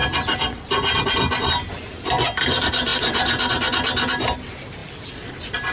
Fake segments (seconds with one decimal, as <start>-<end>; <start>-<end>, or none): none